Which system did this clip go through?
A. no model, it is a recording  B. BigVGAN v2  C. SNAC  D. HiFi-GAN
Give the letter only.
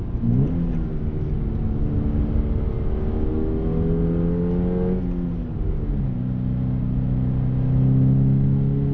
A